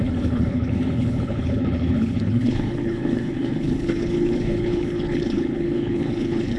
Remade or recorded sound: remade